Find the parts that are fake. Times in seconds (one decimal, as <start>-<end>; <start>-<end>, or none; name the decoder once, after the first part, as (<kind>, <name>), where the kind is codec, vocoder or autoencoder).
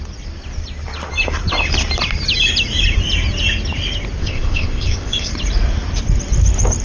4.2-5.3 (codec, ZipCodec)